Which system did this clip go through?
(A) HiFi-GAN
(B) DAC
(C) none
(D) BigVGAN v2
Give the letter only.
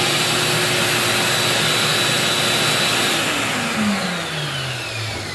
C